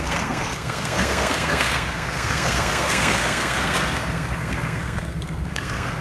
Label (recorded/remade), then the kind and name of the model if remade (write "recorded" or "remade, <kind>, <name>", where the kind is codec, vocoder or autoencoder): remade, codec, SNAC